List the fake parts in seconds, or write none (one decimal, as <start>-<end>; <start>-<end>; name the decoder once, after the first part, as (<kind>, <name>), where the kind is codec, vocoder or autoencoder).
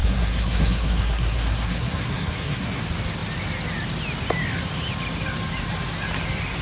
0.0-2.8 (codec, SNAC)